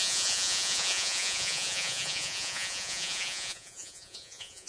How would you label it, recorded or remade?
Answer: remade